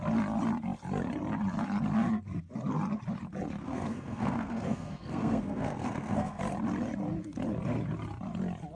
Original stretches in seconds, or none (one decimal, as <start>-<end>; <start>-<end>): 0.0-3.6; 6.4-8.7